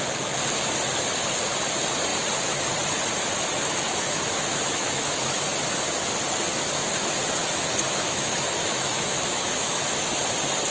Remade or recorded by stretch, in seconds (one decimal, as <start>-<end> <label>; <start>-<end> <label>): 0.0-3.5 recorded; 3.5-5.5 remade; 5.5-7.4 recorded; 7.4-10.2 remade; 10.2-10.7 recorded